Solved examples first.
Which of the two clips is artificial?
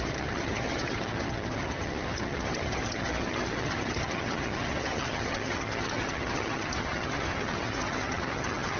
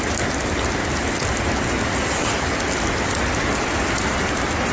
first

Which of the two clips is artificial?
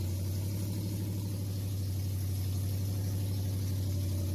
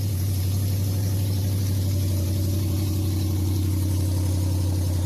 second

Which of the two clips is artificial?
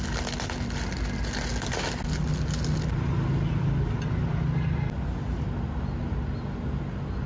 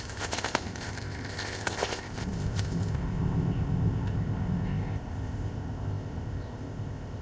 second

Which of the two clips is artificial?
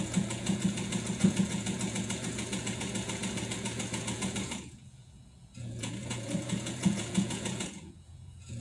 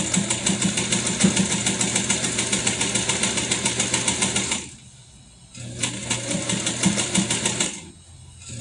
first